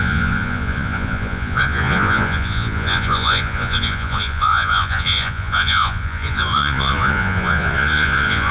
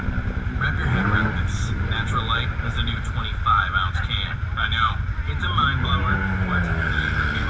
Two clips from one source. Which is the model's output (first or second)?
first